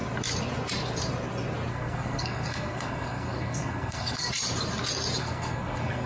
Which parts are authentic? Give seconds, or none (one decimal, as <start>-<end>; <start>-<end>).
0.0-1.7; 4.3-5.2